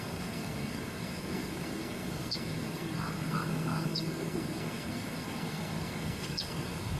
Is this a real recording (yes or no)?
no